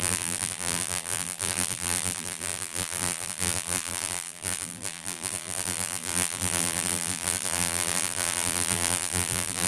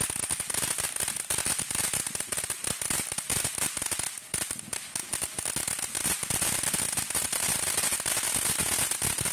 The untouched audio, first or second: second